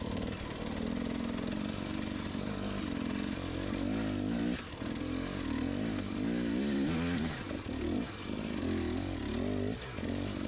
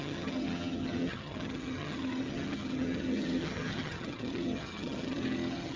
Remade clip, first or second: second